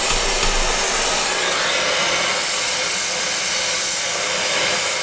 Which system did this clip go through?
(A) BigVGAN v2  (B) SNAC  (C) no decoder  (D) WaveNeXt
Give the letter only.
C